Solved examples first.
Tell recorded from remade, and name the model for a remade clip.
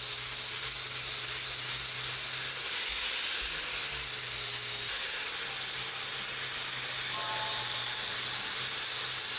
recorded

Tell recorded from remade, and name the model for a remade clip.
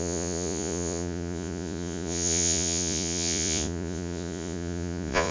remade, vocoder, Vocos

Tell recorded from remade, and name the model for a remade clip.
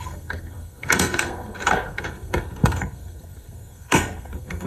remade, codec, SNAC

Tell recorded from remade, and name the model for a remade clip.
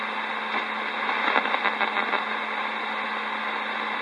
recorded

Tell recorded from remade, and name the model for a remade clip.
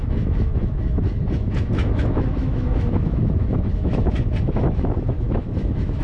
remade, autoencoder, DAC-VAE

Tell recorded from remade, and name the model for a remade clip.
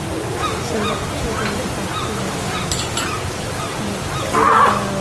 recorded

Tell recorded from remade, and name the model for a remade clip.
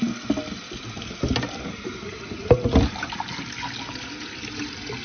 recorded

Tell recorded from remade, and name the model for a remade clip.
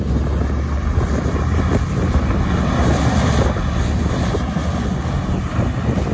recorded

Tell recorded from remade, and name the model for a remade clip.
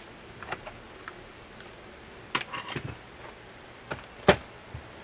recorded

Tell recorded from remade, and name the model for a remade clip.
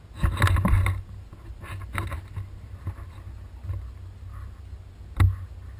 recorded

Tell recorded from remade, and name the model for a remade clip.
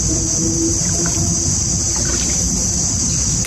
recorded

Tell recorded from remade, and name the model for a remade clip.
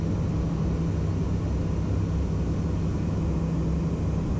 recorded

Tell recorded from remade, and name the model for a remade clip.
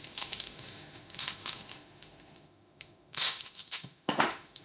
remade, autoencoder, DAC-VAE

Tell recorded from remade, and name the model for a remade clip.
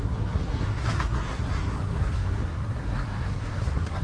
remade, codec, SNAC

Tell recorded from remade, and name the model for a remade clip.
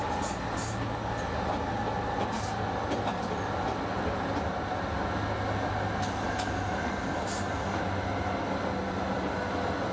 recorded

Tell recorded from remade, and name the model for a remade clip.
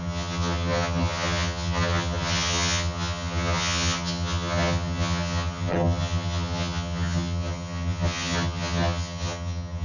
remade, vocoder, HiFi-GAN